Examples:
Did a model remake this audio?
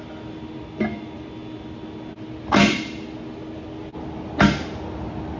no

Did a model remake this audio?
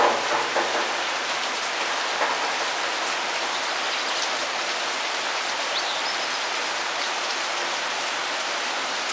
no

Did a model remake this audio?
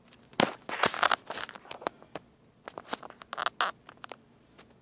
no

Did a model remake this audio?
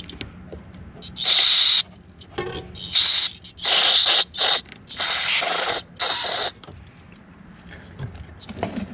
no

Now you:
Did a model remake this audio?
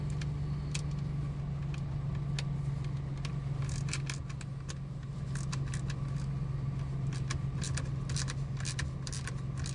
no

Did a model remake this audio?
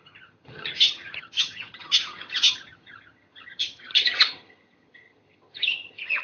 yes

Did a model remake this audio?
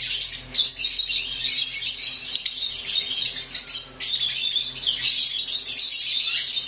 no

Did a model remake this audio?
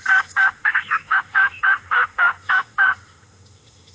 yes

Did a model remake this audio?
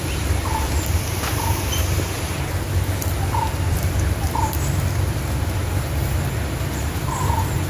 yes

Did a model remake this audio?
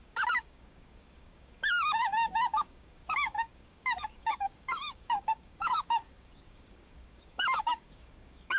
yes